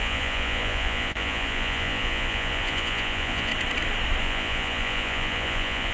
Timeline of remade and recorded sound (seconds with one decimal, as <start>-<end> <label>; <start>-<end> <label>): 0.0-3.5 remade; 3.5-4.2 recorded; 4.2-5.9 remade